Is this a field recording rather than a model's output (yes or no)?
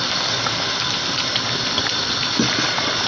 yes